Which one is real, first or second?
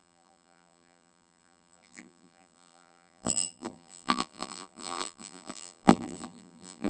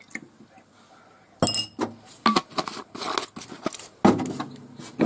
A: second